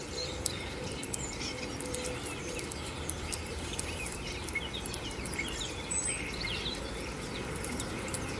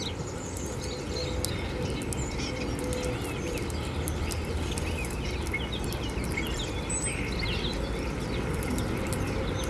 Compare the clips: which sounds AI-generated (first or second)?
first